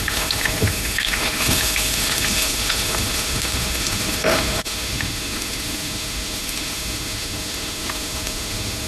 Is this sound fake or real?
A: fake